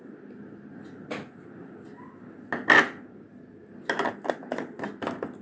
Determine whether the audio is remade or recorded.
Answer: recorded